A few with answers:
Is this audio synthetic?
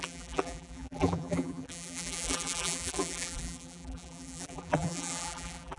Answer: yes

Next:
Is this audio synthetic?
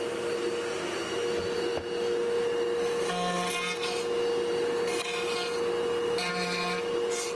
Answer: no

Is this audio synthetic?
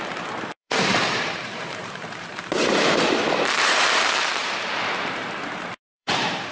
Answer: yes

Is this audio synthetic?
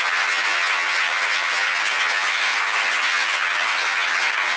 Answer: yes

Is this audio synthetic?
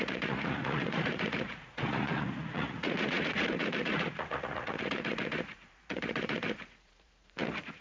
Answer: yes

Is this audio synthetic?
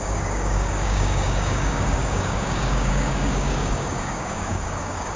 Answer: yes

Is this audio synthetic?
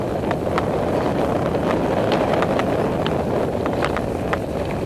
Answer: no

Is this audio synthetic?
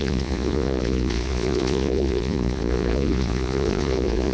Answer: yes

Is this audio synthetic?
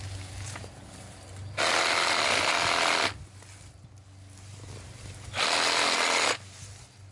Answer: no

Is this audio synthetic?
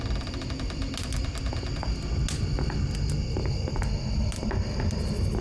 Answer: no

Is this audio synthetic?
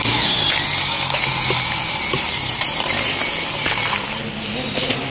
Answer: no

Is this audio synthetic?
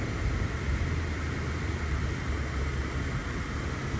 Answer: no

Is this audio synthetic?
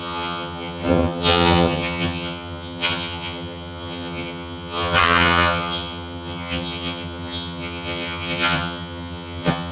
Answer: yes